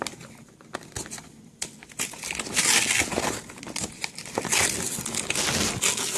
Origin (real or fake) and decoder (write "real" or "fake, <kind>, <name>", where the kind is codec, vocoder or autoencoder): real